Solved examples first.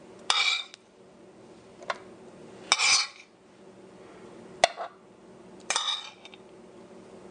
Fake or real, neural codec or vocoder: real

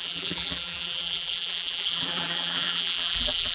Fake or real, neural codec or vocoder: fake, vocoder, BigVGAN v2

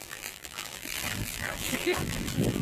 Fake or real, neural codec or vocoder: fake, vocoder, BigVGAN v2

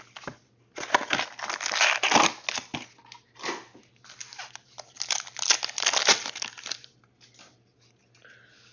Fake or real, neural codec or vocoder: real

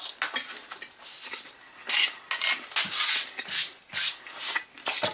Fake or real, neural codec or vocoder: real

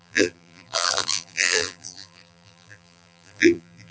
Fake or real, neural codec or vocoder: fake, vocoder, BigVGAN v2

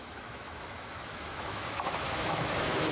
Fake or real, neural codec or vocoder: fake, autoencoder, DAC-VAE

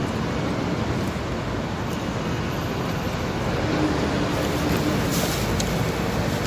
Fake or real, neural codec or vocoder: real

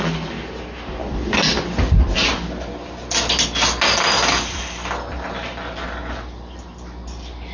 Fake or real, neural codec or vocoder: real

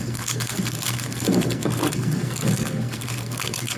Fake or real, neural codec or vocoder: fake, codec, SNAC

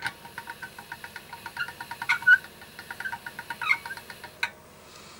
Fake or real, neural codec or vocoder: real